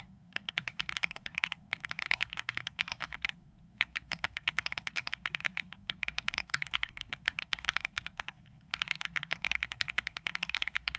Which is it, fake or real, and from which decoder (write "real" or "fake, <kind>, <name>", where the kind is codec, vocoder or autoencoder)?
fake, codec, SNAC